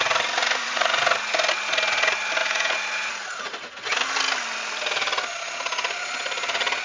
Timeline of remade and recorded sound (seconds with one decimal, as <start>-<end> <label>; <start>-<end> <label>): 0.0-0.4 recorded; 0.4-1.0 remade; 1.0-2.4 recorded; 2.4-3.8 remade; 3.8-6.8 recorded